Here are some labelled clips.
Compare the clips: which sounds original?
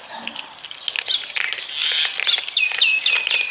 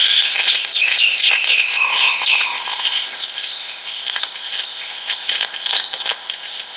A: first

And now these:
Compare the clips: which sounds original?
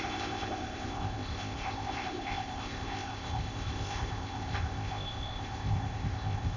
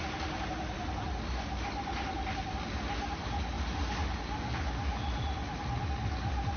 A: second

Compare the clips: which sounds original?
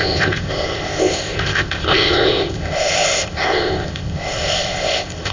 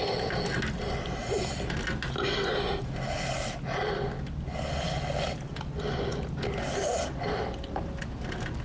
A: second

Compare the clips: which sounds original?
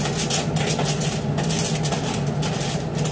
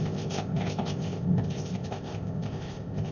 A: first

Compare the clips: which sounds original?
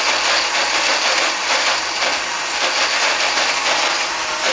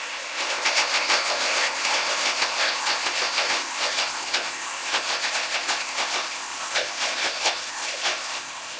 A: first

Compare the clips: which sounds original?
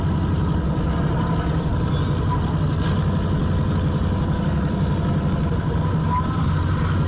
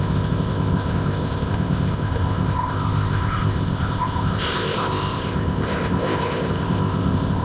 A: first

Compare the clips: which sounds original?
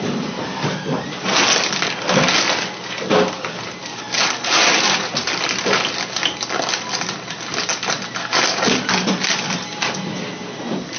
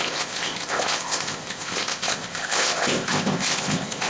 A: first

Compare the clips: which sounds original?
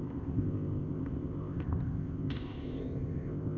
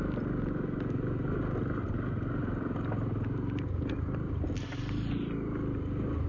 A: second